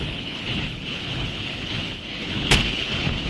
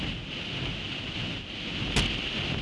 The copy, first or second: first